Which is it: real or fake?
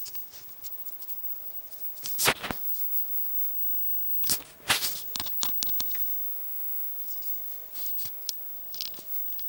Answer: real